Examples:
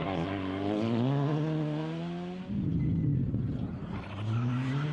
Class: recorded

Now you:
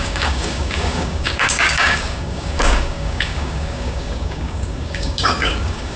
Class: remade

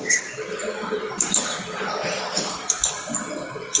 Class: recorded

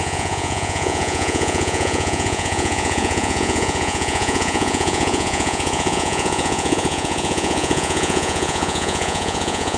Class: remade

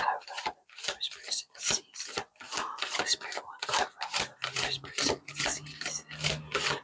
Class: recorded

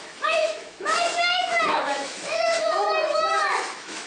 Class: remade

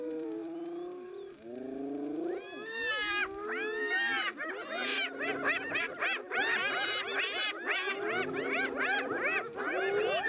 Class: remade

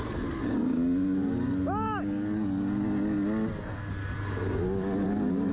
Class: recorded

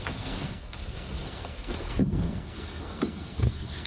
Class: remade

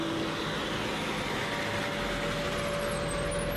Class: recorded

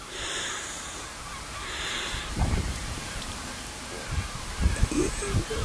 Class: remade